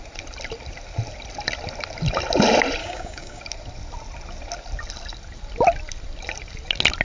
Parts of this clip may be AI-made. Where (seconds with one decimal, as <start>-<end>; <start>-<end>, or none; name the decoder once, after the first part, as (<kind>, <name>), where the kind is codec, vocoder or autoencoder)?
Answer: 2.8-3.4 (codec, DAC)